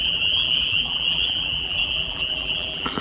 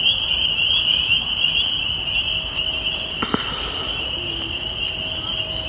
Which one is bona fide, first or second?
second